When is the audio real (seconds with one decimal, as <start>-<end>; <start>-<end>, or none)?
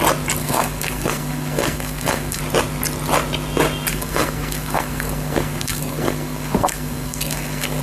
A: 0.0-0.4; 2.4-3.9